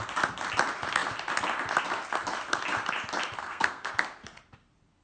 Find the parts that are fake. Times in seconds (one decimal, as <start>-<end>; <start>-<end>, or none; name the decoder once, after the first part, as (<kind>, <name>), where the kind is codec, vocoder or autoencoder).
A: 3.4-3.9 (codec, SNAC)